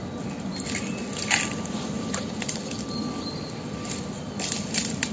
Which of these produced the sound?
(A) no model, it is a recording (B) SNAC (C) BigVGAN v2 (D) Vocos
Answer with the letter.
A